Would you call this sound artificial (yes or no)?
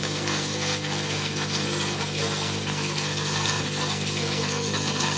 yes